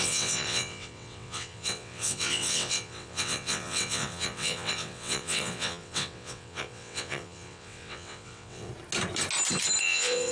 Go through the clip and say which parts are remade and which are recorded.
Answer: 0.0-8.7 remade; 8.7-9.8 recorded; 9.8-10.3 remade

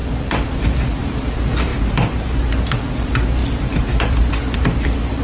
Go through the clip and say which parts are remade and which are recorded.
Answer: 0.0-5.2 recorded

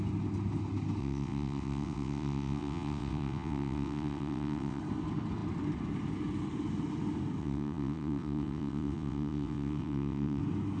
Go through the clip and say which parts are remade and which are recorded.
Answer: 0.0-1.0 recorded; 1.0-4.8 remade; 4.8-7.4 recorded; 7.4-10.4 remade; 10.4-10.8 recorded

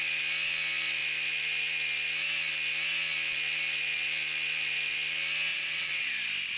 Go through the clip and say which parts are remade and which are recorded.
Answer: 0.0-5.5 recorded; 5.5-6.0 remade; 6.0-6.6 recorded

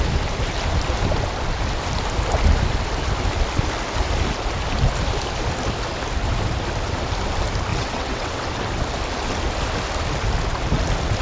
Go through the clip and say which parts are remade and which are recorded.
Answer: 0.0-7.7 recorded; 7.7-8.5 remade; 8.5-11.2 recorded

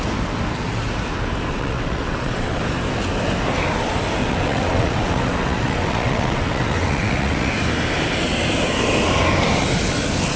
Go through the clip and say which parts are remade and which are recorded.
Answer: 0.0-1.5 recorded; 1.5-2.6 remade; 2.6-4.2 recorded; 4.2-7.5 remade; 7.5-10.4 recorded

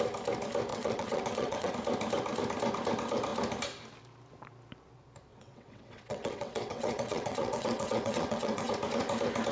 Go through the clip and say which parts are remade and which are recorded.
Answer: 0.0-0.7 recorded; 0.7-1.7 remade; 1.7-5.3 recorded; 5.3-8.7 remade; 8.7-9.5 recorded

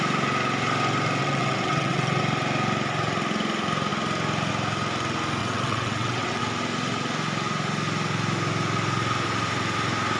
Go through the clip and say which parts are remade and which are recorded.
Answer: 0.0-1.2 recorded; 1.2-2.2 remade; 2.2-5.4 recorded; 5.4-6.4 remade; 6.4-10.2 recorded